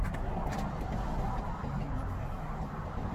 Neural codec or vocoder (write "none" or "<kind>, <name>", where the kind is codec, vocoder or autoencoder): none